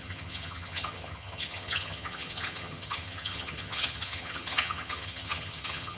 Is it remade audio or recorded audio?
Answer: remade